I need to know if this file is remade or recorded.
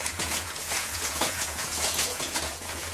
remade